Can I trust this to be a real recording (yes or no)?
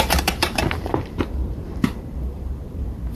no